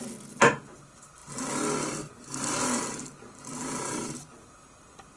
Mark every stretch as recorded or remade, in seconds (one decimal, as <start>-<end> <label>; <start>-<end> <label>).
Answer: 0.0-5.2 recorded